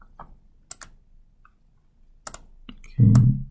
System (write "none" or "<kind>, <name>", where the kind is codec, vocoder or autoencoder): none